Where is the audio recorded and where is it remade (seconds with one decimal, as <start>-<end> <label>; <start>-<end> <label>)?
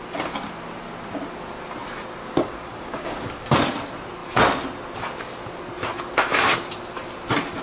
0.0-2.2 recorded; 2.2-3.5 remade; 3.5-7.6 recorded